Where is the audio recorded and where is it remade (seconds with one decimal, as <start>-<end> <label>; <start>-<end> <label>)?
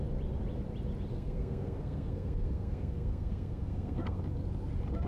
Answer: 0.0-1.1 recorded; 1.1-4.2 remade; 4.2-5.1 recorded